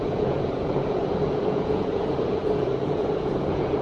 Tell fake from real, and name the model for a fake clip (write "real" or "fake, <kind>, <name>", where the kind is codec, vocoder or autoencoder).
fake, vocoder, Vocos